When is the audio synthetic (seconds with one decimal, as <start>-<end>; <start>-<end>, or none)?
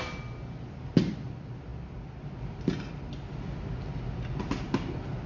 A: none